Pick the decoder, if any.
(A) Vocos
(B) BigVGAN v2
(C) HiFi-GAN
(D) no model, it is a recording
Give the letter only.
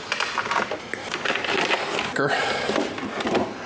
D